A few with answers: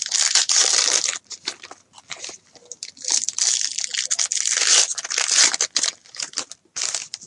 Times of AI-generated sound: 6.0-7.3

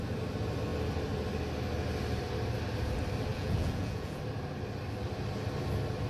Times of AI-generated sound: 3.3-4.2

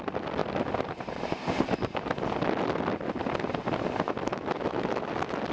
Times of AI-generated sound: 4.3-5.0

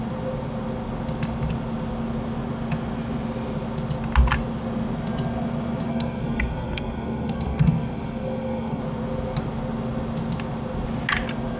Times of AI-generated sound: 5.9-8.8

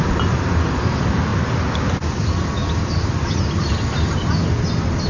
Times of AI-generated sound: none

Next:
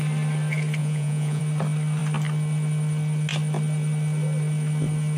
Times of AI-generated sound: 0.8-1.4